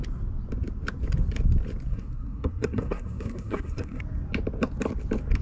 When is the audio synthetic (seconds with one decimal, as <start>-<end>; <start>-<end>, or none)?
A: 1.9-4.0